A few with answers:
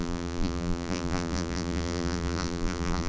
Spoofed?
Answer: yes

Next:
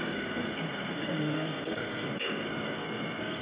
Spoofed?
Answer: yes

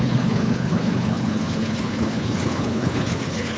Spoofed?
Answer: yes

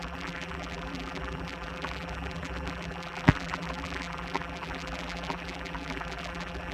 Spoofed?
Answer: yes